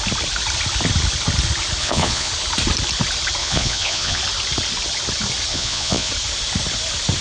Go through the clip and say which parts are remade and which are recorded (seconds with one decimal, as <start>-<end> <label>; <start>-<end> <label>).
0.0-1.8 recorded; 1.8-2.3 remade; 2.3-3.4 recorded; 3.4-4.2 remade; 4.2-5.5 recorded; 5.5-6.1 remade; 6.1-7.2 recorded